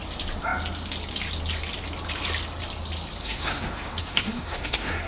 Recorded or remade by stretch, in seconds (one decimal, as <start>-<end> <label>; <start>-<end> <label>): 0.0-3.2 recorded; 3.2-5.1 remade